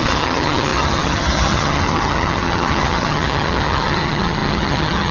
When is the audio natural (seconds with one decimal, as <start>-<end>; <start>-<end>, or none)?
none

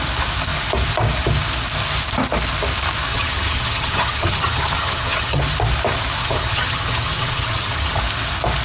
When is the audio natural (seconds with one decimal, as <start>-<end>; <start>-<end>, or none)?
0.0-3.1; 5.4-6.2; 8.0-8.6

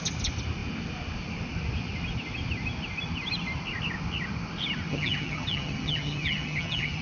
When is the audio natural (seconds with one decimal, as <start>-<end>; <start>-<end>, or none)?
0.0-4.9

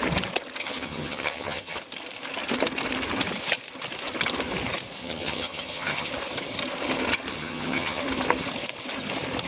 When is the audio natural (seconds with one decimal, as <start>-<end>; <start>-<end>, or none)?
0.0-0.6; 1.8-5.0; 6.1-7.3; 8.0-9.5

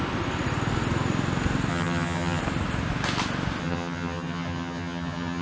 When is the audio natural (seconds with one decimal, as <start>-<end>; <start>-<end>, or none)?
0.0-1.7; 2.4-3.6